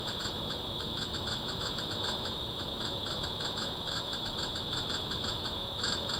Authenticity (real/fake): fake